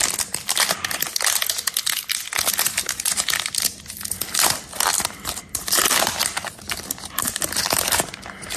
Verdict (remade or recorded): recorded